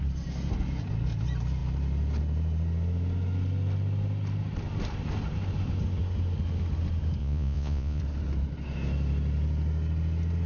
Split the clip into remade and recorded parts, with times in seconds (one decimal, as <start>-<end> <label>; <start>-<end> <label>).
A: 0.0-7.2 recorded; 7.2-8.0 remade; 8.0-10.5 recorded